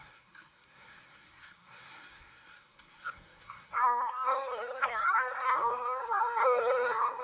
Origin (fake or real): fake